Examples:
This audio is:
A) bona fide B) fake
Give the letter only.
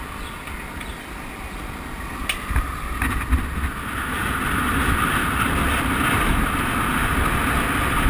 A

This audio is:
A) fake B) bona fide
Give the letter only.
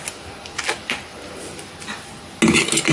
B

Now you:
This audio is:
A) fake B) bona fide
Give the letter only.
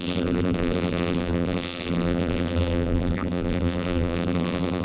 A